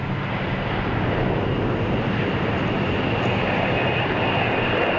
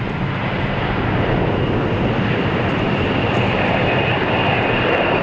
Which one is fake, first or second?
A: second